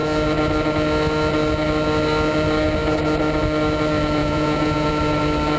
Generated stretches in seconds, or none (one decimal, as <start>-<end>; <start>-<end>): 4.2-4.9